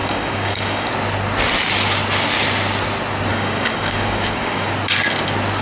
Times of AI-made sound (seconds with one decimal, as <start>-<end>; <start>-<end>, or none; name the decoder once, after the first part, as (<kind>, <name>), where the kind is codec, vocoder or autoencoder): 0.0-0.9 (codec, DAC); 3.3-4.7